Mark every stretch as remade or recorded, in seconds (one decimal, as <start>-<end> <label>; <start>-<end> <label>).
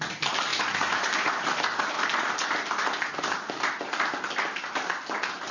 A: 0.0-5.5 recorded